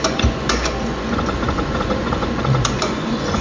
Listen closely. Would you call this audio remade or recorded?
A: remade